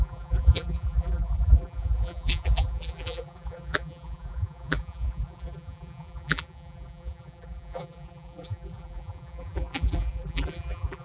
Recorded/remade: remade